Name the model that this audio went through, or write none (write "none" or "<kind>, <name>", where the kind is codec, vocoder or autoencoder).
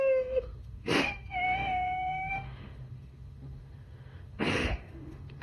autoencoder, DAC-VAE